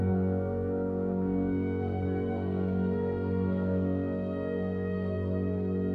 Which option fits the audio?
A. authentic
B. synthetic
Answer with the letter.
B